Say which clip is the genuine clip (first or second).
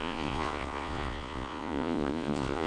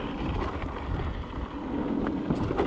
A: second